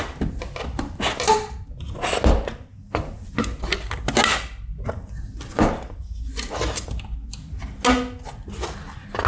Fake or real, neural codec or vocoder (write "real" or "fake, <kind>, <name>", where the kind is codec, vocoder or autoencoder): real